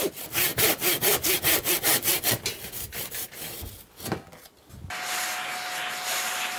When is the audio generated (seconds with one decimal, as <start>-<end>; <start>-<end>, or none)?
none